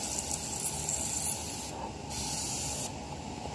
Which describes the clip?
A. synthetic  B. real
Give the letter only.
B